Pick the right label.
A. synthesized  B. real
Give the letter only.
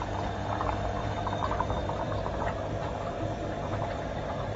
B